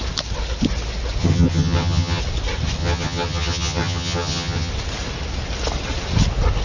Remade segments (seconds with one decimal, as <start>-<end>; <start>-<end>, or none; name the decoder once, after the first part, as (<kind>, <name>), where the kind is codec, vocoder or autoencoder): 1.2-2.2 (vocoder, HiFi-GAN); 2.8-4.7